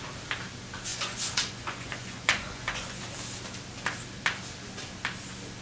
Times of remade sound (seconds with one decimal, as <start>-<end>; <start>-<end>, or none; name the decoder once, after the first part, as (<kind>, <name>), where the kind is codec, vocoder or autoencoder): 0.9-3.0 (vocoder, Vocos)

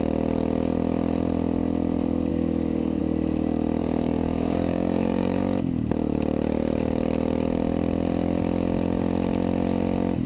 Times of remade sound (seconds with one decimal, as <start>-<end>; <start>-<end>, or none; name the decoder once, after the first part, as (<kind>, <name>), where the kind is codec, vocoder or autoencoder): 2.3-3.0 (codec, DAC); 3.8-5.4

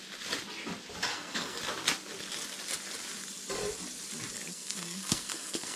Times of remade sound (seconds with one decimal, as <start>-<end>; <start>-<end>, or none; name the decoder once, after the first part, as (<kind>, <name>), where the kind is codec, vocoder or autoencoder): 1.1-1.6 (codec, SNAC); 4.5-5.8

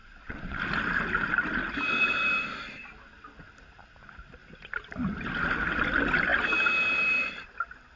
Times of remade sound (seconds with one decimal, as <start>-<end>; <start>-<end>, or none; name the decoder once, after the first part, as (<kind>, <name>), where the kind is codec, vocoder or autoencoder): 0.0-0.6 (vocoder, Vocos)

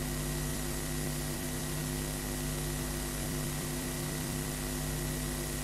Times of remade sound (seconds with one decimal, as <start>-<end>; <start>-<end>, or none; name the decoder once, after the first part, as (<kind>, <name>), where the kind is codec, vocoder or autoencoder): 0.5-1.8 (vocoder, BigVGAN v2); 3.2-4.5

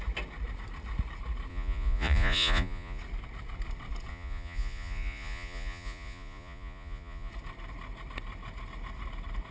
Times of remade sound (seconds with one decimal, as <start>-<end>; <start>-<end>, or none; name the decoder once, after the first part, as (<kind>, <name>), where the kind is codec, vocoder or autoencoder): 1.5-3.0 (vocoder, Vocos); 4.1-7.3

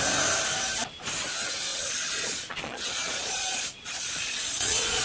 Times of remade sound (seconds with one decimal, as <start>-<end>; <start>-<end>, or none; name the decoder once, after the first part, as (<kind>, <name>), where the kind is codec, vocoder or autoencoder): 1.7-5.0 (vocoder, Vocos)

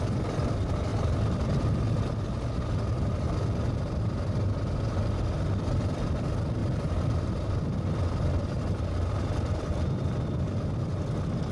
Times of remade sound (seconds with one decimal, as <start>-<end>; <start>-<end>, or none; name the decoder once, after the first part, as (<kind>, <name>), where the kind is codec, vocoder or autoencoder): 0.9-1.6 (vocoder, BigVGAN v2); 6.6-7.6; 8.4-10.1